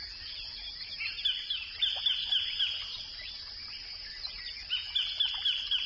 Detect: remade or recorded recorded